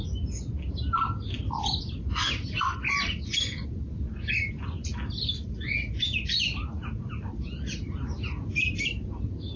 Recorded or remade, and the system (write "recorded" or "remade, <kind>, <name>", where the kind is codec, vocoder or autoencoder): recorded